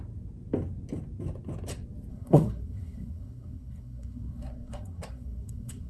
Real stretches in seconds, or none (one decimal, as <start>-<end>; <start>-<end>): 0.0-2.1